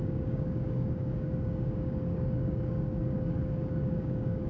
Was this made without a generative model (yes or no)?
no